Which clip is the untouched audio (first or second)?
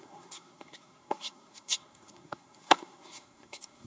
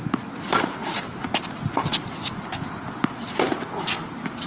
second